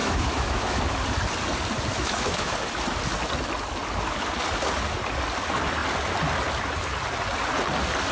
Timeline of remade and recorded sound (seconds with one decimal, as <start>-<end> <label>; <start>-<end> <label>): 0.0-0.8 remade; 0.8-1.9 recorded; 1.9-2.5 remade; 2.5-8.1 recorded